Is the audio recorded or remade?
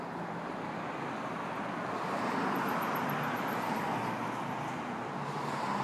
recorded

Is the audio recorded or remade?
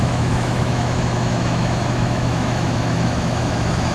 remade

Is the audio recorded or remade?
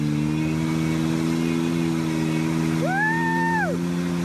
recorded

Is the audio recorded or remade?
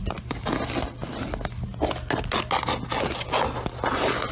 recorded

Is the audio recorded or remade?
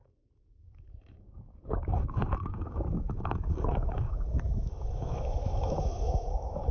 remade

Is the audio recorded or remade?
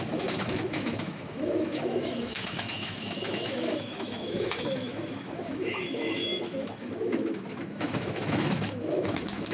remade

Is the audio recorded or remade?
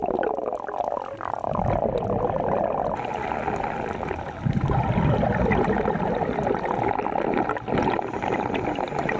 recorded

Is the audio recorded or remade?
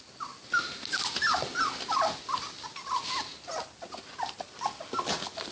recorded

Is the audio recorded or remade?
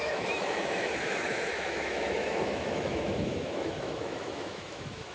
remade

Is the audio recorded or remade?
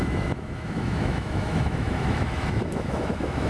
remade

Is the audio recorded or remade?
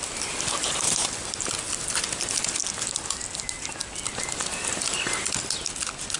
recorded